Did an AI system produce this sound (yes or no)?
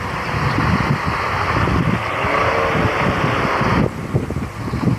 no